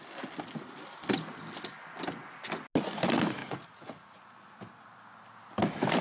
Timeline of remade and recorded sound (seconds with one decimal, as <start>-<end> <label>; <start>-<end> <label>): 0.0-3.4 recorded; 3.4-4.2 remade; 4.2-6.0 recorded